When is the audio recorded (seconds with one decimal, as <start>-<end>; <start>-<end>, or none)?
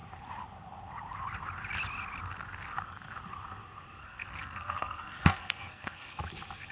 0.0-4.0; 6.2-6.7